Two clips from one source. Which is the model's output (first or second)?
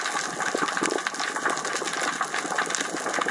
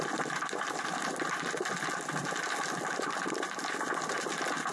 second